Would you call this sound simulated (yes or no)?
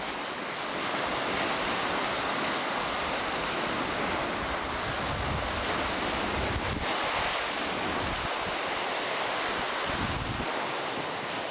no